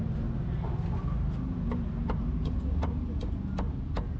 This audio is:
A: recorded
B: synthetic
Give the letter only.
A